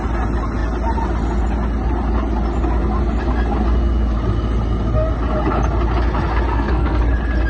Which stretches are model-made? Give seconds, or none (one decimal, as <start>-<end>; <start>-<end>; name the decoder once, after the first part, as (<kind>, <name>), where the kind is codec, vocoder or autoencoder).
6.5-7.0 (codec, SNAC)